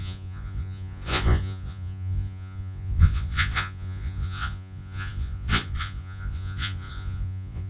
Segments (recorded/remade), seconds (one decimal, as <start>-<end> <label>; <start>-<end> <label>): 0.0-7.7 remade